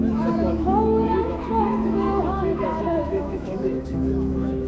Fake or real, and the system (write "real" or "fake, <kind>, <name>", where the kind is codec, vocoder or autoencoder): fake, autoencoder, DAC-VAE